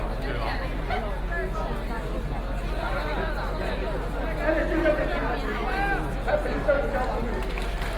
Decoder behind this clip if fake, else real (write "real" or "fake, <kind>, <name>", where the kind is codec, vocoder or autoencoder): real